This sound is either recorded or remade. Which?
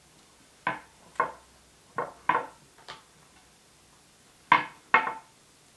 recorded